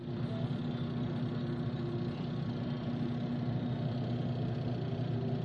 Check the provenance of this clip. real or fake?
real